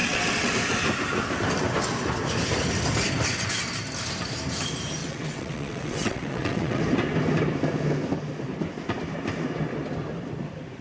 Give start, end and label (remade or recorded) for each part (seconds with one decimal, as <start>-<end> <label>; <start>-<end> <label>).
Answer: 0.0-0.5 remade; 0.5-5.0 recorded; 5.0-6.8 remade; 6.8-10.8 recorded